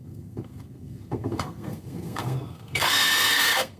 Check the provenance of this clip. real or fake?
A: fake